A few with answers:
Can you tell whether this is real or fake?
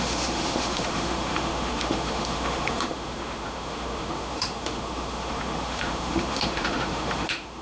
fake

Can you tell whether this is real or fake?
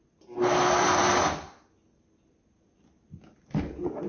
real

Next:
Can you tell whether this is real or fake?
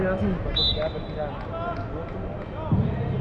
real